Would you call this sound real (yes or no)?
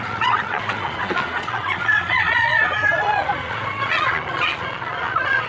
no